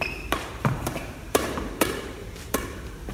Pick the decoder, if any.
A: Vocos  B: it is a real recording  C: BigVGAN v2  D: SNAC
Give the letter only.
C